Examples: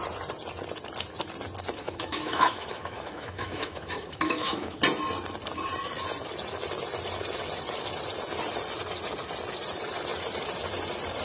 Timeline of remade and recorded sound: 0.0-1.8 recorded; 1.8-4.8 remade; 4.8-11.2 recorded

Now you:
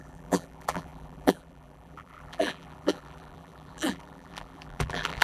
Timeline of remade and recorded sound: 0.0-5.2 remade

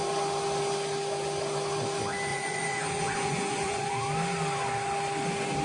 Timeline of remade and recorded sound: 0.0-2.3 recorded; 2.3-3.9 remade; 3.9-5.6 recorded

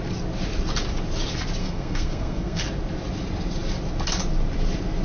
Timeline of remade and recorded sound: 0.0-1.6 recorded; 1.6-2.6 remade; 2.6-5.0 recorded